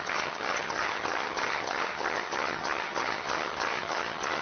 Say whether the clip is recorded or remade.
remade